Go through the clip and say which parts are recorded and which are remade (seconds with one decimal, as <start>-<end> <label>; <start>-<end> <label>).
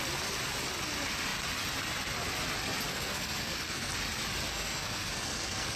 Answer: 0.0-2.9 recorded; 2.9-3.9 remade; 3.9-4.5 recorded; 4.5-5.8 remade